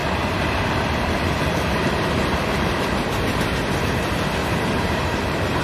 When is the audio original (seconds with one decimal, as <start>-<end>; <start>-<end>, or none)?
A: 3.4-4.4